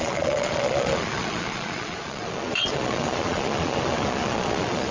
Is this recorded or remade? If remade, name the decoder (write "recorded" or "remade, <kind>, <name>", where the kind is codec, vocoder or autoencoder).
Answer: remade, vocoder, Vocos